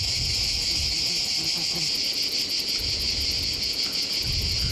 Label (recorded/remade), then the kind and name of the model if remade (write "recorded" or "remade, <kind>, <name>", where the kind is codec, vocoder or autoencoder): recorded